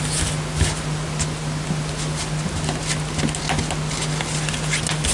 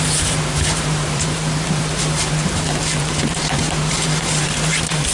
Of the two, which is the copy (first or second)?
second